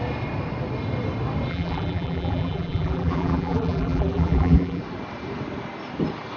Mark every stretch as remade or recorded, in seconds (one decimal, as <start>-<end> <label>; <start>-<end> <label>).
0.0-1.5 recorded; 1.5-4.8 remade; 4.8-6.4 recorded

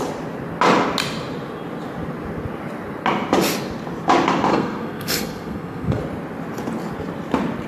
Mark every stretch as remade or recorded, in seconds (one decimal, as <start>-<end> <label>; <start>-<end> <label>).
0.0-4.5 recorded; 4.5-6.0 remade; 6.0-7.7 recorded

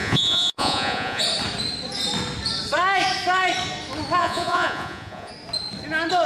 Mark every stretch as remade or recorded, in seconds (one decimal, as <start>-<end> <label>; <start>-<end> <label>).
0.0-1.2 remade; 1.2-4.2 recorded; 4.2-5.3 remade; 5.3-6.3 recorded

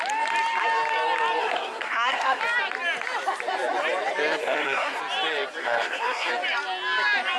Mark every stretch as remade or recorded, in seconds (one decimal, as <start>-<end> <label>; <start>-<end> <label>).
0.0-1.4 recorded; 1.4-2.4 remade; 2.4-4.4 recorded; 4.4-5.0 remade; 5.0-5.6 recorded; 5.6-6.3 remade; 6.3-7.4 recorded

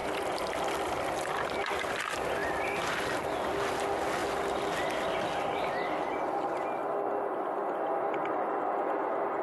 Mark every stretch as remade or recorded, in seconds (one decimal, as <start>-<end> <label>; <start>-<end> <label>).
0.0-0.5 remade; 0.5-9.4 recorded

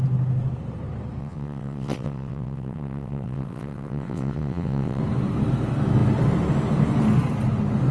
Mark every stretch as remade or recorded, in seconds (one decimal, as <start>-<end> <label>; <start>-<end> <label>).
0.0-1.2 recorded; 1.2-5.0 remade; 5.0-7.9 recorded